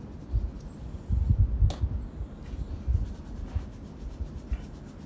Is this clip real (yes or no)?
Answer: yes